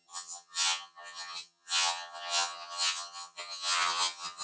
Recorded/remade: remade